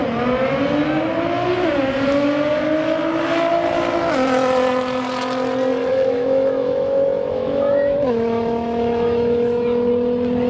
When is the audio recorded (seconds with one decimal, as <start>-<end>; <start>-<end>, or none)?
0.0-5.9; 9.9-10.5